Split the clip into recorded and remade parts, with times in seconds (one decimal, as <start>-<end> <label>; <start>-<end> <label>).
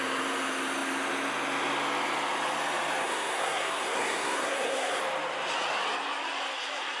0.0-3.0 recorded; 3.0-5.0 remade; 5.0-7.0 recorded